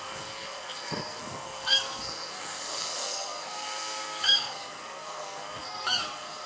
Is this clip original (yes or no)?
no